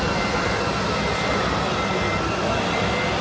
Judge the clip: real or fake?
real